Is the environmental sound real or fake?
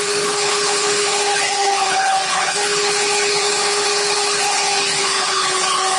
fake